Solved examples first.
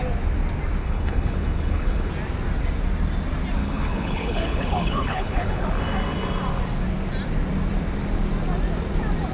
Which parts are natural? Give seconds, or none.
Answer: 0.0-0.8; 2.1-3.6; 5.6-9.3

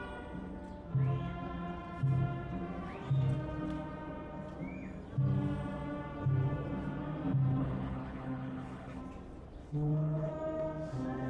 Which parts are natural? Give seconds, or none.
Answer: 0.0-7.6; 9.0-9.6; 10.3-11.3

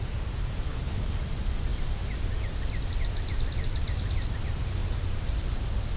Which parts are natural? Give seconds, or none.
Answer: 0.0-0.7; 1.2-6.0

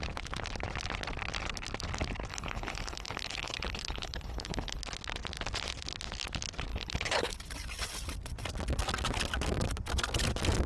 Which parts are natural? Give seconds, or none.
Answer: 0.0-2.3; 4.8-6.7; 7.3-10.7

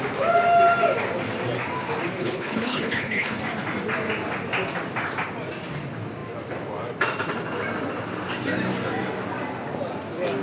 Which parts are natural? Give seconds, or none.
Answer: 0.0-2.2; 3.4-10.4

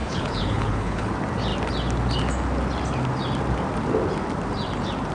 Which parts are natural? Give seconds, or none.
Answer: 1.1-5.1

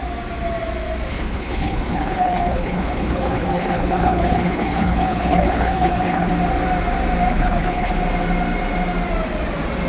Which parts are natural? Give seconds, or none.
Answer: 0.0-1.1; 6.3-7.3; 7.9-9.9